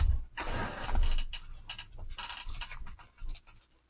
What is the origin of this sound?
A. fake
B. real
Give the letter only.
B